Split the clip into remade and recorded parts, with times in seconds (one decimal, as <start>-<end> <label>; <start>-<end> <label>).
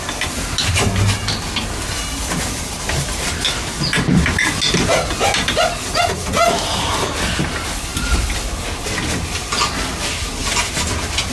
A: 0.0-11.3 recorded